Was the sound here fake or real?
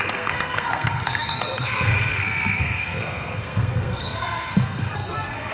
fake